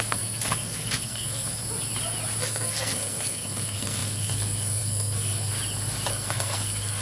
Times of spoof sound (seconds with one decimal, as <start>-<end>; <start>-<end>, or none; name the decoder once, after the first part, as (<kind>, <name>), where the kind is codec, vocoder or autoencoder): 0.0-1.6 (codec, SNAC); 2.4-5.5; 6.1-7.0